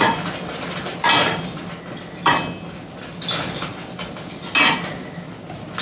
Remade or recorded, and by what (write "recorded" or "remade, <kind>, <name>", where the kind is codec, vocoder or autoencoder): recorded